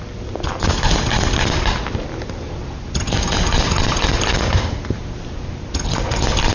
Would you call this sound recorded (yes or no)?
yes